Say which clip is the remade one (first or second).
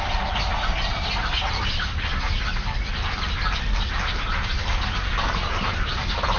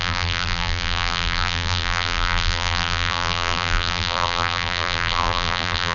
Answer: second